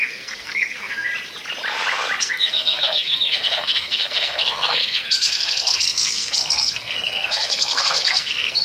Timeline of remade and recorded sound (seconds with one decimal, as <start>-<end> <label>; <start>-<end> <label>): 0.0-1.1 remade; 1.1-2.2 recorded; 2.2-8.6 remade